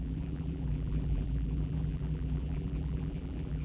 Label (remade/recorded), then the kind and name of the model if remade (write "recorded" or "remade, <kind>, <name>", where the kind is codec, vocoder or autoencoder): remade, vocoder, BigVGAN v2